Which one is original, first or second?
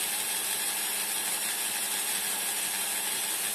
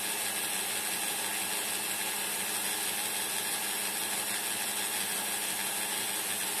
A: second